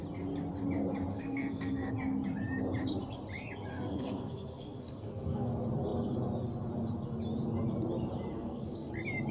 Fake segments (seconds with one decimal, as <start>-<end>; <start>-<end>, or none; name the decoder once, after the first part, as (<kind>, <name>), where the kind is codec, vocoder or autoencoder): 1.1-1.9 (codec, SNAC); 3.7-5.5; 8.3-8.9